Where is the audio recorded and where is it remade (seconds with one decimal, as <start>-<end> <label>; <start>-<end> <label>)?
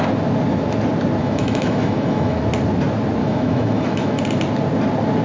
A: 0.0-1.2 recorded; 1.2-2.4 remade; 2.4-3.2 recorded; 3.2-4.2 remade; 4.2-5.2 recorded